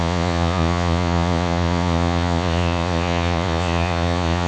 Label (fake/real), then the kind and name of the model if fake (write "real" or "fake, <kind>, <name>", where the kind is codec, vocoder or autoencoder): fake, vocoder, Vocos